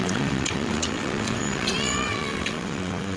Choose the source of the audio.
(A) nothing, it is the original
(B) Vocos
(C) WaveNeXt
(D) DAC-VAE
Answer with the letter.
C